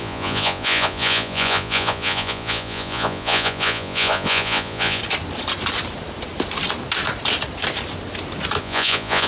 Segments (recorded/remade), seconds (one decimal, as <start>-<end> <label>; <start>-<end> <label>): 0.0-5.0 remade; 5.0-8.6 recorded; 8.6-9.3 remade